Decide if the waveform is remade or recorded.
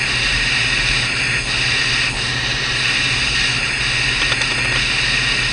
recorded